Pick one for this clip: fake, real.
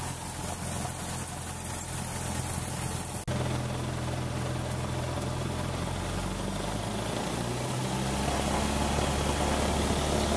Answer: real